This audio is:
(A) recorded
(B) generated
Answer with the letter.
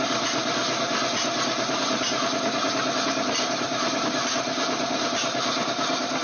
B